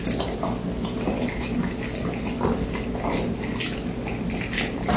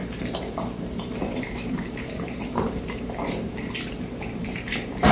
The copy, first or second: second